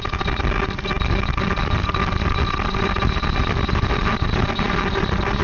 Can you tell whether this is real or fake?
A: real